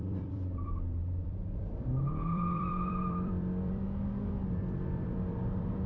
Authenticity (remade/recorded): remade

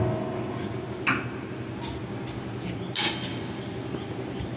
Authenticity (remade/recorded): recorded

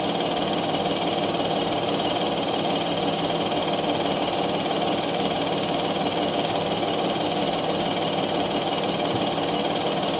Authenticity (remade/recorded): remade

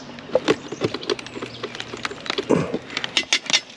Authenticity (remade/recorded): recorded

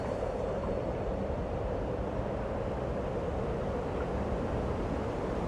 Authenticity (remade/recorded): recorded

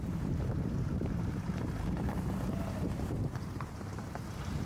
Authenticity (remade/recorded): remade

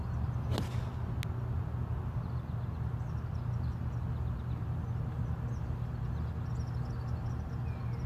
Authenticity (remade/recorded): recorded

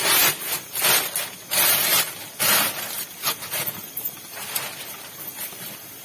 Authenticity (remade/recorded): recorded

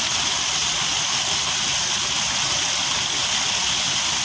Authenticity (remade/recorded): recorded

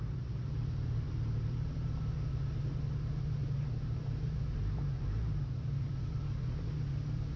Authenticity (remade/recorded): remade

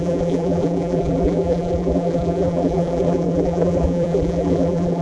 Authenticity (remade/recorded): remade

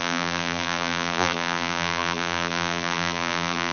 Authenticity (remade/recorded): remade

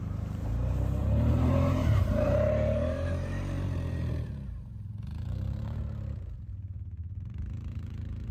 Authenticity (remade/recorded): remade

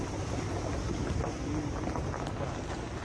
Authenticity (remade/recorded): recorded